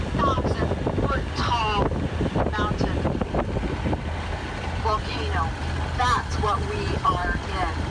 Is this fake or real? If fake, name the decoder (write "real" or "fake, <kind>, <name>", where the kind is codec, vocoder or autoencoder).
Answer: real